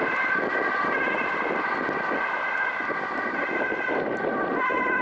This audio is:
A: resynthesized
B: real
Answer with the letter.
B